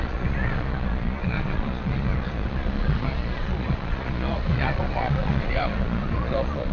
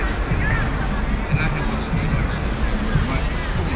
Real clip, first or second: second